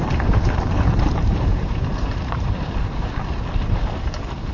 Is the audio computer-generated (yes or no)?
yes